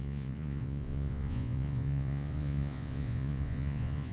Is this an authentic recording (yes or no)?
no